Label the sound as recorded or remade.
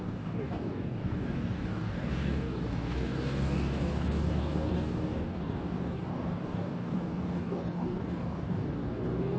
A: remade